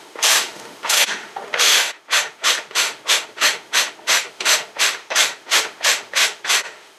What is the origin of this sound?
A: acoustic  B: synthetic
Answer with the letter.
B